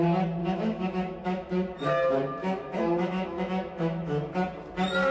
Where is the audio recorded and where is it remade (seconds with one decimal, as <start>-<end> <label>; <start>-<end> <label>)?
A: 0.0-0.4 recorded; 0.4-1.5 remade; 1.5-2.4 recorded; 2.4-4.3 remade; 4.3-5.1 recorded